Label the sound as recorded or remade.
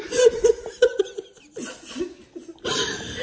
recorded